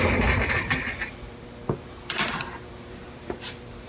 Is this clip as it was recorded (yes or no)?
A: no